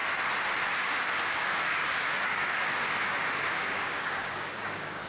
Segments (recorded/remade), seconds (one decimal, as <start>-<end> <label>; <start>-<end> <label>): 0.0-0.8 recorded; 0.8-5.1 remade